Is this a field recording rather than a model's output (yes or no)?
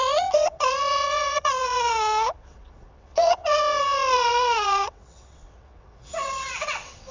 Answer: no